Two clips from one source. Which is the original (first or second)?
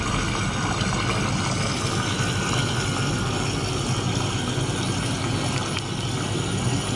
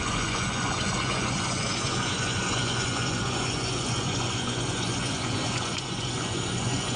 first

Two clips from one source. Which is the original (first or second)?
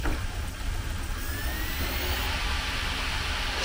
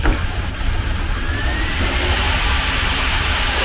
first